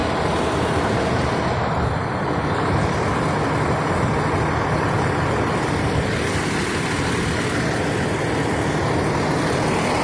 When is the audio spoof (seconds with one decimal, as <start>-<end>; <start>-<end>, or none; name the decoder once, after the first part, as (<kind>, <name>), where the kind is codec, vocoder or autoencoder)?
none